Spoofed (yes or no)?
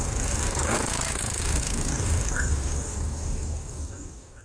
yes